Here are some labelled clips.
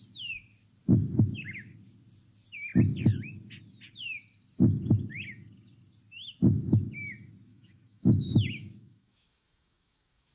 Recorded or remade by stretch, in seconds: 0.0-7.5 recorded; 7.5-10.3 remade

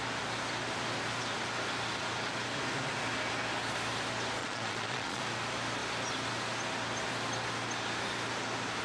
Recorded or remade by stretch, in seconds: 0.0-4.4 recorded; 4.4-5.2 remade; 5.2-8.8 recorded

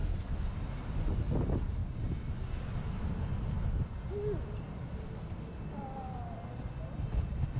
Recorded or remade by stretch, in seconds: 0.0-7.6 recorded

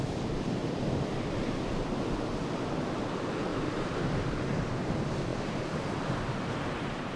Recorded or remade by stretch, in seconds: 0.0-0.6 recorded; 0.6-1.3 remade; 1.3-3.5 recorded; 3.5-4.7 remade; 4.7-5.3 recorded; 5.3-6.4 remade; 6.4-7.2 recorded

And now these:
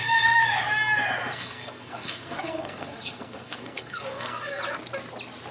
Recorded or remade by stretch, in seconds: 0.0-0.6 remade; 0.6-1.3 recorded; 1.3-4.6 remade; 4.6-5.5 recorded

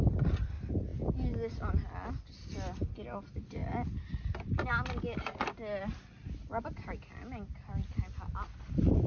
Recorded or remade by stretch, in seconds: 0.0-9.1 recorded